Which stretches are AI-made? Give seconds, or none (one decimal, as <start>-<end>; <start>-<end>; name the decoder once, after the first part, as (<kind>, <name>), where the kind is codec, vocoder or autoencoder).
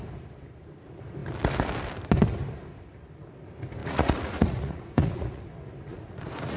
3.8-5.4 (vocoder, Vocos); 5.9-6.6